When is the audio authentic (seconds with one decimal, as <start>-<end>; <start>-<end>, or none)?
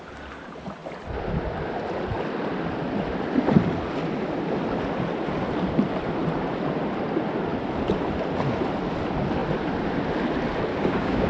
0.0-10.7